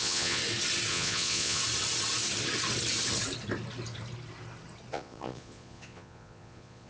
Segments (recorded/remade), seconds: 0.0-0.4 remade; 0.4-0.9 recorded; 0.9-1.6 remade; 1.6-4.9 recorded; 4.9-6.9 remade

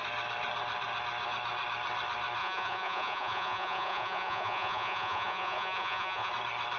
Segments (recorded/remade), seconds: 0.0-2.4 recorded; 2.4-6.3 remade; 6.3-6.8 recorded

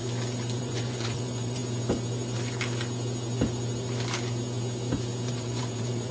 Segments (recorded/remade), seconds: 0.0-0.6 recorded; 0.6-1.6 remade; 1.6-5.3 recorded; 5.3-6.1 remade

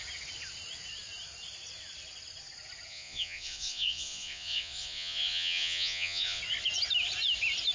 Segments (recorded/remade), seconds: 0.0-2.9 recorded; 2.9-6.4 remade; 6.4-7.7 recorded

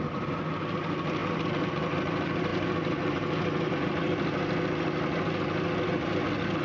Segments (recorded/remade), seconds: 0.0-6.6 recorded

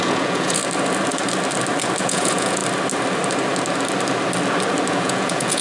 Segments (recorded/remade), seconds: 0.0-0.6 remade; 0.6-2.0 recorded; 2.0-2.6 remade; 2.6-4.9 recorded; 4.9-5.6 remade